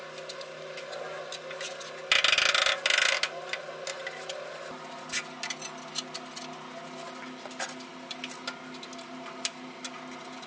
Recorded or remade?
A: recorded